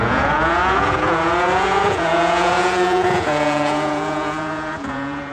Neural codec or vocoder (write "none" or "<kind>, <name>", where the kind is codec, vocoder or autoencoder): vocoder, Vocos